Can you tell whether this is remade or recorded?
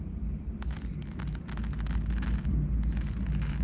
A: recorded